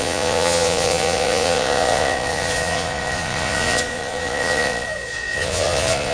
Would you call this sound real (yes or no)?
no